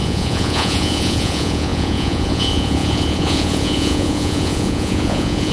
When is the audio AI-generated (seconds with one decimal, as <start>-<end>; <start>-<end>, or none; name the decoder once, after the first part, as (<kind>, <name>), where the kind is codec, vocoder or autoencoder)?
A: 0.0-5.5 (vocoder, Vocos)